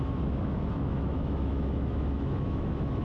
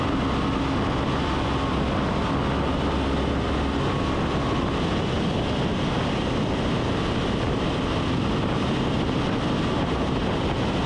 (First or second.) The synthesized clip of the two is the first